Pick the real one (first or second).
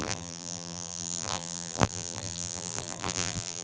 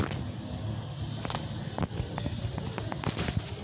second